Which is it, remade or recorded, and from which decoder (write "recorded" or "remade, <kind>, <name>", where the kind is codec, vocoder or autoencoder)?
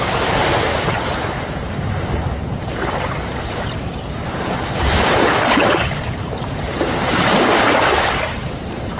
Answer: remade, vocoder, BigVGAN v2